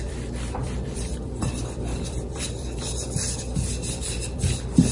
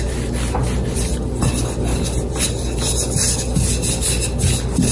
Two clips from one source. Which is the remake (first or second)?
first